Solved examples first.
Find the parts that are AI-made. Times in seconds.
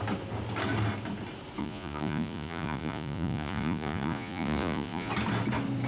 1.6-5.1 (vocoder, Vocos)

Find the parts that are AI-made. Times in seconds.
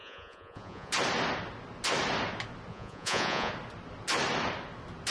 0.0-0.9 (vocoder, Vocos); 2.7-3.5